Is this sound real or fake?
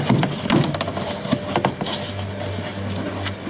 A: real